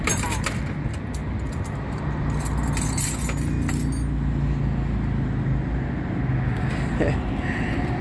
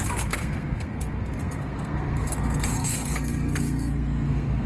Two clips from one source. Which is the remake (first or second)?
second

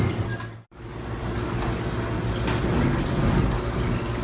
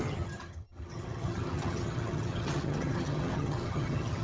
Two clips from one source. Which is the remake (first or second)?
second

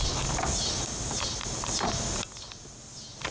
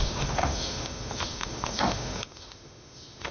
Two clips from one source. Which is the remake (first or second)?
second